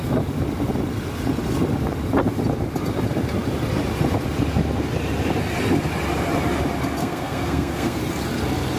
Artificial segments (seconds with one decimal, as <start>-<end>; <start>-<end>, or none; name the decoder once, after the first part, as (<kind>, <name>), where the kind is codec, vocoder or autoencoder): 7.0-8.0 (codec, SNAC)